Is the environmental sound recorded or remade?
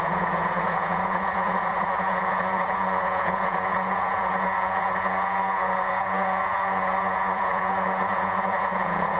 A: remade